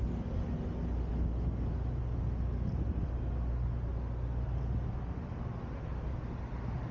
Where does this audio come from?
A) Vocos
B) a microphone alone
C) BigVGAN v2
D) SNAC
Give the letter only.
B